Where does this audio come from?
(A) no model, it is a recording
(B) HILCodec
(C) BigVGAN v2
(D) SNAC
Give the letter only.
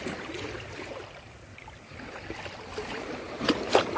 A